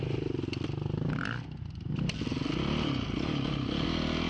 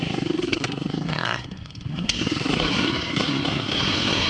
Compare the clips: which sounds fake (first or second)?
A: second